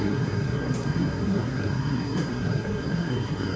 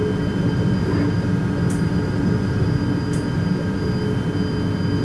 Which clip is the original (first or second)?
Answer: second